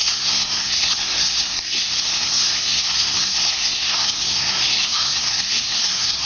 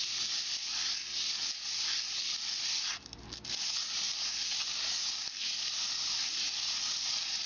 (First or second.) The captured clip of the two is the second